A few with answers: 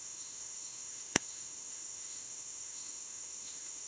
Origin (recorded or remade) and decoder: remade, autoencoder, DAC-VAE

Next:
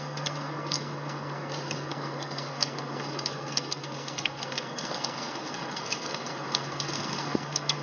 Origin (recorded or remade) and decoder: remade, codec, SNAC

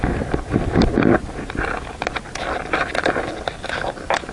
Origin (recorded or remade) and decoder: recorded